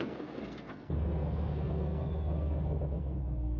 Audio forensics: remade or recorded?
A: remade